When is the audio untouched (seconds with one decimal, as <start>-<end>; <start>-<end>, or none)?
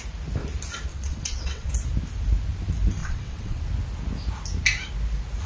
0.0-0.9; 1.7-3.0; 3.6-5.5